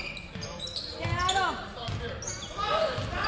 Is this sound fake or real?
real